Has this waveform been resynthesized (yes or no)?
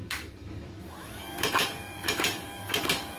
yes